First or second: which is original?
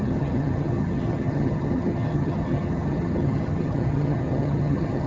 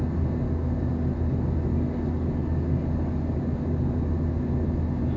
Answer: second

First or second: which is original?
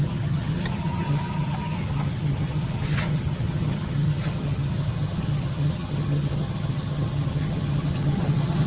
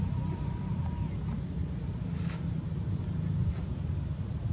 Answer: second